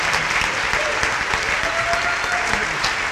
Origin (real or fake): real